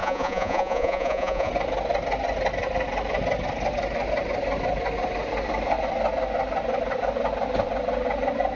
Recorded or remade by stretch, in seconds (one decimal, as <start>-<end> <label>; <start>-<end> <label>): 0.0-1.5 remade; 1.5-8.6 recorded